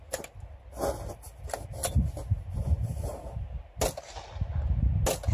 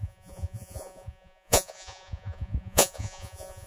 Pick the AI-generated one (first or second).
second